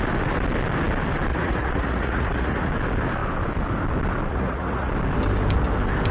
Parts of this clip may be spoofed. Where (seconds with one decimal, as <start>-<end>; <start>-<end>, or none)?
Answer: 1.3-2.7; 4.3-4.9